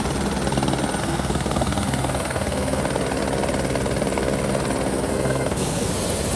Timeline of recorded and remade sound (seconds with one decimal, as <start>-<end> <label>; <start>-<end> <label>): 0.0-1.0 recorded; 1.0-2.8 remade; 2.8-4.9 recorded; 4.9-5.9 remade; 5.9-6.4 recorded